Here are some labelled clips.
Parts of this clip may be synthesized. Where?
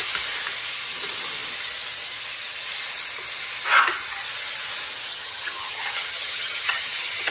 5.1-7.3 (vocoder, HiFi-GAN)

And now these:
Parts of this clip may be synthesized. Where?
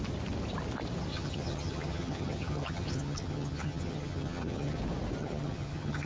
1.1-4.8 (vocoder, HiFi-GAN); 5.2-6.1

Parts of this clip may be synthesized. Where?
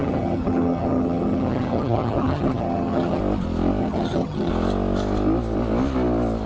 0.0-3.2 (vocoder, HiFi-GAN); 3.8-4.5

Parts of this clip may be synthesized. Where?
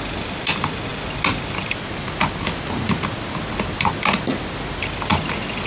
none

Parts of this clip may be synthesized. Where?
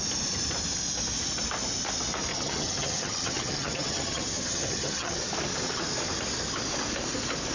2.3-5.2 (vocoder, HiFi-GAN)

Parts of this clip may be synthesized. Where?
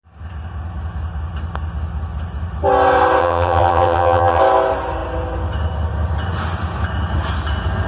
3.2-4.4 (vocoder, HiFi-GAN)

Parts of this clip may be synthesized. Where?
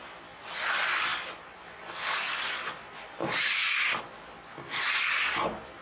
none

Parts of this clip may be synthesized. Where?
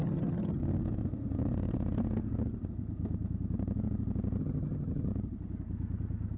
0.0-0.6 (vocoder, HiFi-GAN); 4.4-5.1